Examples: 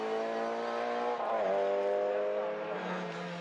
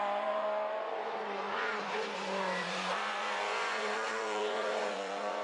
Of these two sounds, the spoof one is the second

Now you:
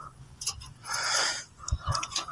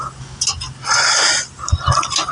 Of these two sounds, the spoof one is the first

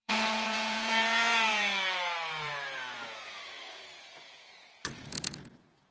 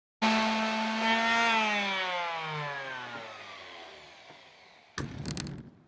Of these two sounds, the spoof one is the first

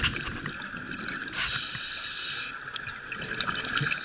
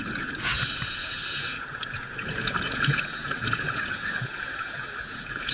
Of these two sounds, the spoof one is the second